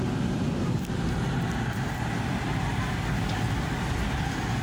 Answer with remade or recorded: recorded